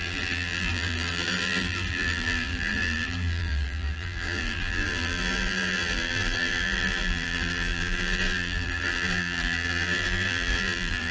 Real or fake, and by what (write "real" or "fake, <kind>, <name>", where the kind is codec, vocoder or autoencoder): fake, vocoder, BigVGAN v2